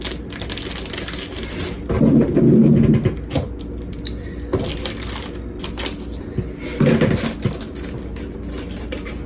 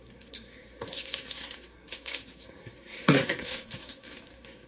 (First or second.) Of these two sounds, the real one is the first